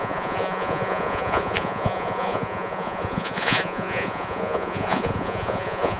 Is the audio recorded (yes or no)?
no